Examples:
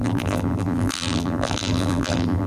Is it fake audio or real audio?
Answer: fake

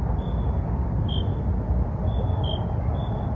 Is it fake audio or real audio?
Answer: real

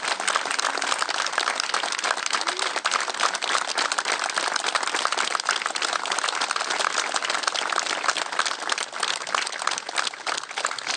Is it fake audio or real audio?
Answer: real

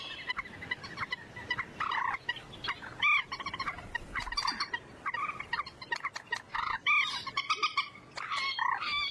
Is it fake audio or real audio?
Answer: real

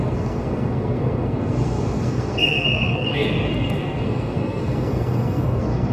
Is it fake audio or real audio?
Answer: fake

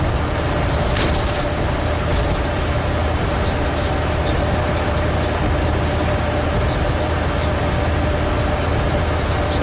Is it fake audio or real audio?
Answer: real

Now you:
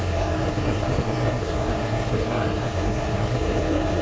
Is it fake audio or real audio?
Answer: fake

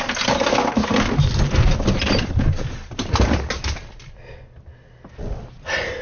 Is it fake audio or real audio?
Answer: real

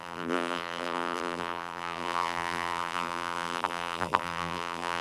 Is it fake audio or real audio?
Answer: fake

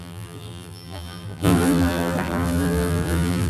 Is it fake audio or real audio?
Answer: fake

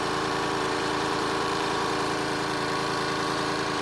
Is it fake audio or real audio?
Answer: fake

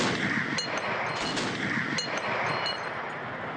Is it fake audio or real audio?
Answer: real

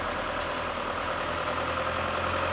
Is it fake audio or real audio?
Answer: real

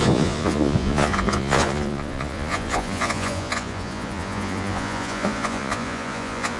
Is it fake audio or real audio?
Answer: fake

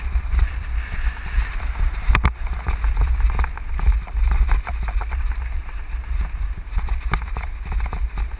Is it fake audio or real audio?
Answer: real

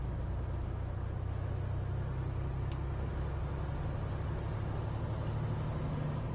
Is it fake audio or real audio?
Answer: real